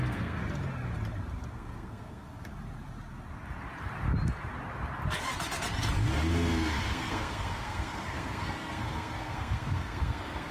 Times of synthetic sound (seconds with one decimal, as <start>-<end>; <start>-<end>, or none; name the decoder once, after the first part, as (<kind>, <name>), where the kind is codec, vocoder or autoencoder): 0.0-0.4 (codec, SNAC); 1.5-2.5; 6.3-10.5